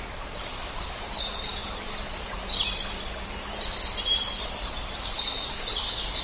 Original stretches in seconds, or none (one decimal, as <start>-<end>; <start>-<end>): 0.0-1.6; 2.4-6.2